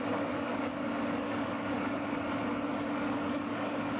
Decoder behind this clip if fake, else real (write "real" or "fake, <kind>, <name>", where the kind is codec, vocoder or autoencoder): fake, codec, DAC